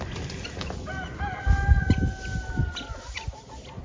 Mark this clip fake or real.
real